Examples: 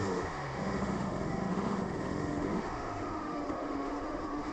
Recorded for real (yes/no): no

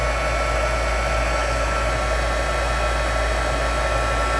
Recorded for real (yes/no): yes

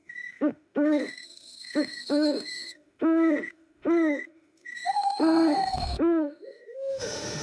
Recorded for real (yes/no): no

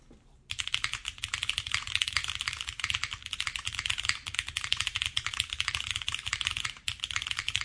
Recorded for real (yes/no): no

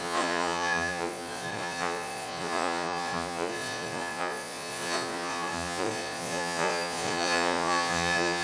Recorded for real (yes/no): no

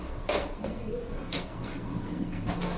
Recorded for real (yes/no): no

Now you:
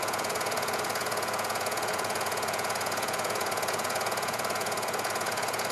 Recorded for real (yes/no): no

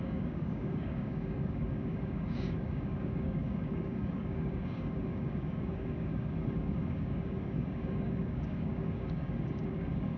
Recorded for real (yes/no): no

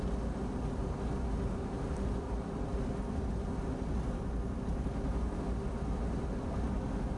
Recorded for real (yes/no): yes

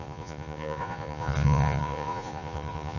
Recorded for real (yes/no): no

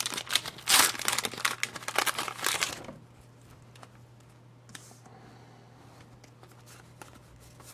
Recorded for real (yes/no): yes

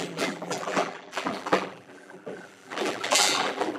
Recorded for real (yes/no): no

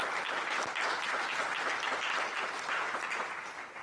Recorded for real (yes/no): yes